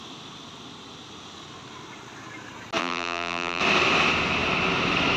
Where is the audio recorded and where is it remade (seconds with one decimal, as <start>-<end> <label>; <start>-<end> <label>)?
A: 0.0-2.8 recorded; 2.8-3.6 remade; 3.6-5.2 recorded